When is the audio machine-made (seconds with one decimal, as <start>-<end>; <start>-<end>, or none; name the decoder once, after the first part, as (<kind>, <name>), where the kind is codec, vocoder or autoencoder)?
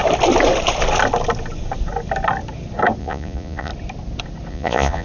3.0-3.7 (vocoder, Vocos); 4.5-5.0